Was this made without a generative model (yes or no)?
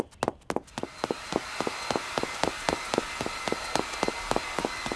yes